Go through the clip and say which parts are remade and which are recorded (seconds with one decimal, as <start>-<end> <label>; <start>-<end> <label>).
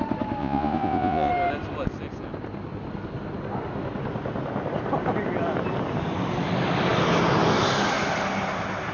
0.0-0.4 recorded; 0.4-1.3 remade; 1.3-8.9 recorded